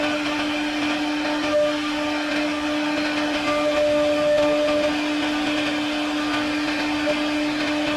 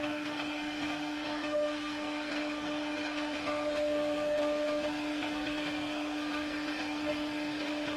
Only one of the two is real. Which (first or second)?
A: first